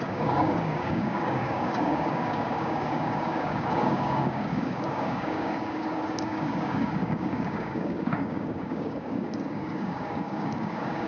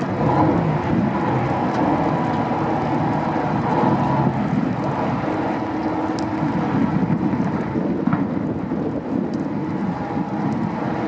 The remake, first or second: first